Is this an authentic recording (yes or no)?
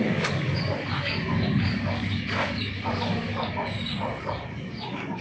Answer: no